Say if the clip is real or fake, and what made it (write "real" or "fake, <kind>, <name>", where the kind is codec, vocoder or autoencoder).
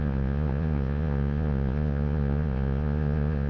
fake, vocoder, Vocos